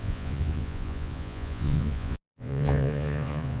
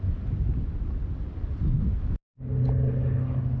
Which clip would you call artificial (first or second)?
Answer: first